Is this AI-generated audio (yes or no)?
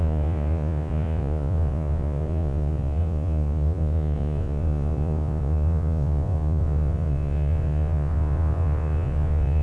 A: yes